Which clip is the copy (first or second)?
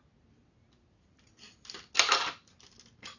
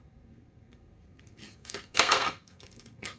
second